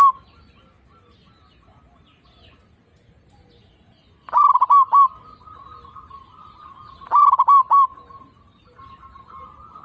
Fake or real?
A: real